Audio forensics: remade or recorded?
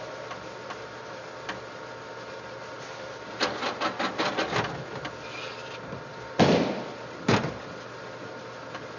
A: recorded